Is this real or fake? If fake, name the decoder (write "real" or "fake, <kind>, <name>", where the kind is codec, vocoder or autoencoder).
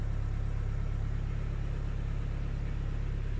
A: real